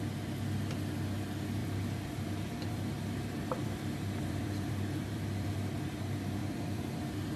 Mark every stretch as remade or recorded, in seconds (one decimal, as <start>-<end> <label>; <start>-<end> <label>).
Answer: 0.0-1.6 recorded; 1.6-6.0 remade; 6.0-6.4 recorded; 6.4-7.0 remade; 7.0-7.4 recorded